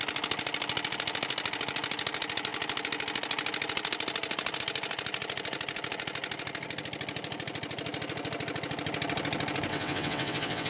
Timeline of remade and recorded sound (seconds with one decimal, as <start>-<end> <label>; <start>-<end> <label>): 0.0-9.7 recorded; 9.7-10.7 remade